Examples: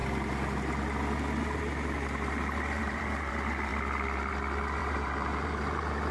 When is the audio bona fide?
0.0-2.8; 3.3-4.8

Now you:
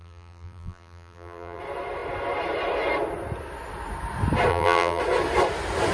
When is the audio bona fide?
1.6-4.5; 5.0-5.9

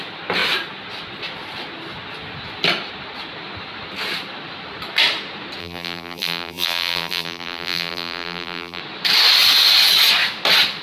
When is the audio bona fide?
0.0-5.6; 8.8-10.8

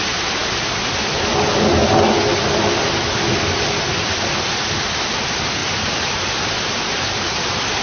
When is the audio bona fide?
0.0-7.8

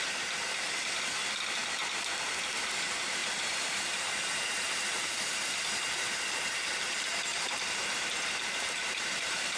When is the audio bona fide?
0.0-3.2; 3.9-7.3

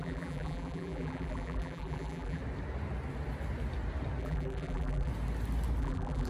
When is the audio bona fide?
2.4-4.2; 5.1-5.8